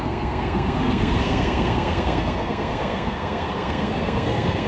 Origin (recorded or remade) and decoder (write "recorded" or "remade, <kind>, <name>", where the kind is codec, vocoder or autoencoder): remade, codec, SNAC